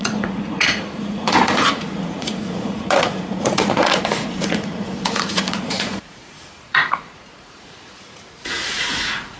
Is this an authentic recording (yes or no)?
no